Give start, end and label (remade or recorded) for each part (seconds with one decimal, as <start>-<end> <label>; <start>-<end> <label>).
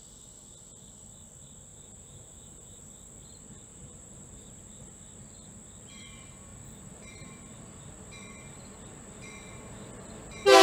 0.0-1.7 recorded; 1.7-2.8 remade; 2.8-3.7 recorded; 3.7-4.5 remade; 4.5-10.6 recorded